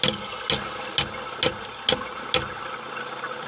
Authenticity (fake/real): real